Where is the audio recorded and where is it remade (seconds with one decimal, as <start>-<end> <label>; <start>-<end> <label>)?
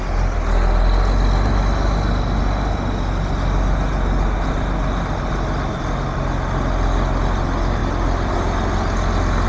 0.0-9.5 recorded